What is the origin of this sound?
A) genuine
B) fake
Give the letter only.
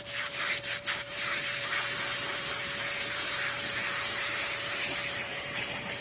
B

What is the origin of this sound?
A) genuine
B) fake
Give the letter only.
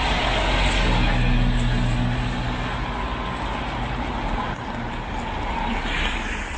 A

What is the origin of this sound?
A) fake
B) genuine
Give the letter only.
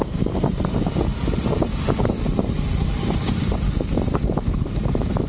A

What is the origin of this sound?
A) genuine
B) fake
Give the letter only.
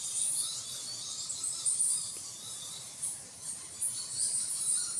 B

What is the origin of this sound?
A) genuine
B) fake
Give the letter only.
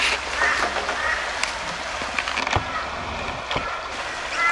A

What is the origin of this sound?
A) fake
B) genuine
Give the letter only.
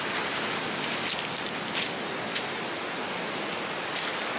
B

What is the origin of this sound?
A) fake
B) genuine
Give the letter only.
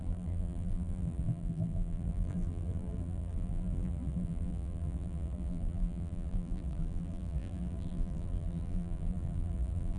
A